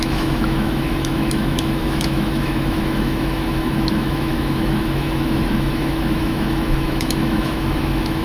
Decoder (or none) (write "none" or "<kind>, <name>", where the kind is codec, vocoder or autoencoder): autoencoder, DAC-VAE